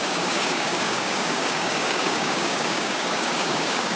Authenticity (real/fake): fake